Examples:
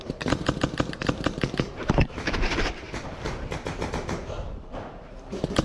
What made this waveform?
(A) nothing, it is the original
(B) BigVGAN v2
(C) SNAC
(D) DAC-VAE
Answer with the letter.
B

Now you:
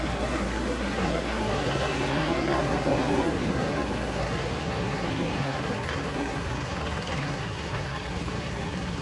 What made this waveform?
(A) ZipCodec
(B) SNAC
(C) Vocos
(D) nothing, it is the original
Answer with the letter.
B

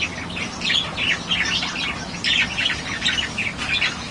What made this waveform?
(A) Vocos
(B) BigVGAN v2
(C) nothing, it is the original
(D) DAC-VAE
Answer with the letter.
C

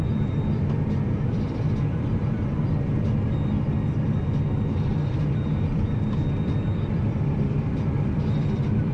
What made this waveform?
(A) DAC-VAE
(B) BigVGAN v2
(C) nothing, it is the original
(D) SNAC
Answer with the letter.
B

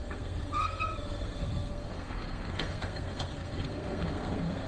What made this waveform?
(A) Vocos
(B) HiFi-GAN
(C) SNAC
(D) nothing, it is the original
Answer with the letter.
C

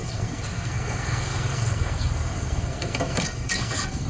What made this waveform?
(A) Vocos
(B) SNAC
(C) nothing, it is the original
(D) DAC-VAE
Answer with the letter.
B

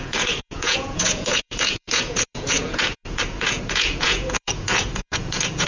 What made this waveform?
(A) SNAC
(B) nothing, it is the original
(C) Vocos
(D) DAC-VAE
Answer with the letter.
C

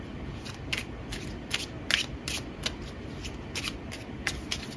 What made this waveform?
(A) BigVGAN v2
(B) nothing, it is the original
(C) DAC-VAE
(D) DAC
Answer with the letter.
B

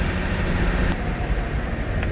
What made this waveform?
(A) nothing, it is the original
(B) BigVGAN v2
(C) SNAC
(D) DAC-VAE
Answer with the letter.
A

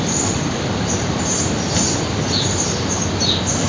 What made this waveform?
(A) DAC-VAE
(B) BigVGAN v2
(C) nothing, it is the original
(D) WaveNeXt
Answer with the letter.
C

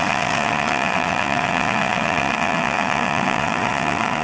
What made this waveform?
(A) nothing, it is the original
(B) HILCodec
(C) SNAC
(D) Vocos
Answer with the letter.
D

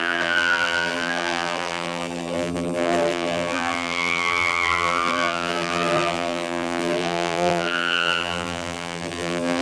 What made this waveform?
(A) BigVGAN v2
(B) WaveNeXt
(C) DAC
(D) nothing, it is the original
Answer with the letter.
A